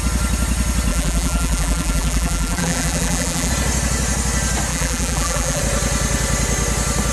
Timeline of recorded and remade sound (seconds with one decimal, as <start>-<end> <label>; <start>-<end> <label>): 0.0-0.9 recorded; 0.9-3.5 remade; 3.5-4.7 recorded; 4.7-5.6 remade; 5.6-7.1 recorded